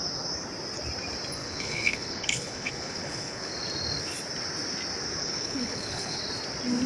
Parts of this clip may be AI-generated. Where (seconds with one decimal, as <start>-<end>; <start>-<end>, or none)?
1.4-3.5; 5.2-6.2